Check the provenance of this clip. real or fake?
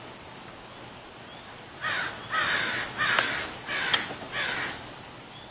real